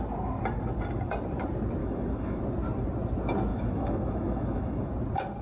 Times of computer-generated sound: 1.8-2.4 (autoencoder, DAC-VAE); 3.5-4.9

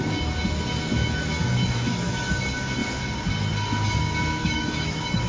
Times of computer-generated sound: 1.0-2.3 (autoencoder, DAC-VAE); 4.4-5.3

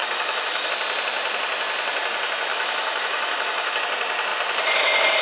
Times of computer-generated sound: 0.0-0.7 (autoencoder, DAC-VAE); 2.5-3.8

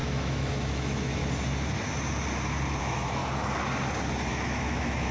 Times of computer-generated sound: 0.0-1.2 (autoencoder, DAC-VAE); 2.8-3.2; 4.3-5.1

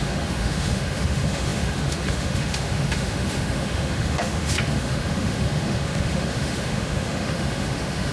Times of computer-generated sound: 0.0-8.1 (autoencoder, DAC-VAE)

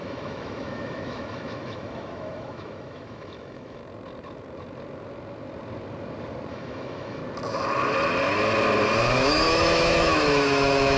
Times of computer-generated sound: 0.0-3.8 (autoencoder, DAC-VAE); 6.5-7.2; 9.1-11.0